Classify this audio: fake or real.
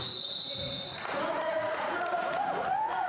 fake